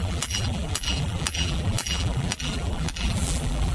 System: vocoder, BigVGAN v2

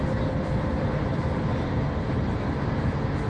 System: none